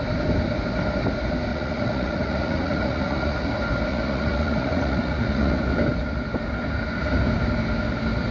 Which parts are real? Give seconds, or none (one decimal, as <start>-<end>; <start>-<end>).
0.0-1.5; 3.5-3.9; 5.6-8.3

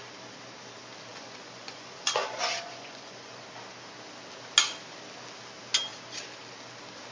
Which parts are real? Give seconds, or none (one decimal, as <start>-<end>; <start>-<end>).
0.0-1.1; 3.4-7.1